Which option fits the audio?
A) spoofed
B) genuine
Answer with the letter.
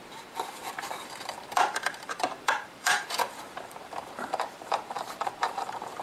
A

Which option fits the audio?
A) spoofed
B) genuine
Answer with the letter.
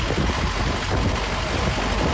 B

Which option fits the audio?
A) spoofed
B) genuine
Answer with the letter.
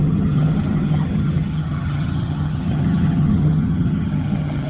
A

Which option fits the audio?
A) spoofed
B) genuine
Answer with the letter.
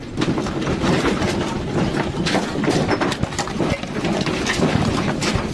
B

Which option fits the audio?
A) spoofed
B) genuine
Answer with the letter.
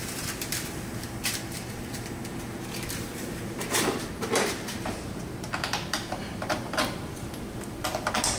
A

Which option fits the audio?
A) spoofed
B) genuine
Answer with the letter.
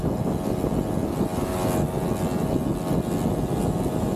B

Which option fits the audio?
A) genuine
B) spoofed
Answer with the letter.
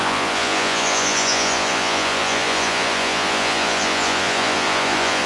B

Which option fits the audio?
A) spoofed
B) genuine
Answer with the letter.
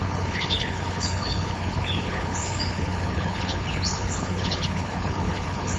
A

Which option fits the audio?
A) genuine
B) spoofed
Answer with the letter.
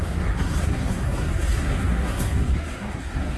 B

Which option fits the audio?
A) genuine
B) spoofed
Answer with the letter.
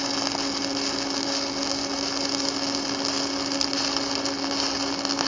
A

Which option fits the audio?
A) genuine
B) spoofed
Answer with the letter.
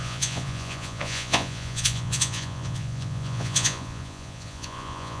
B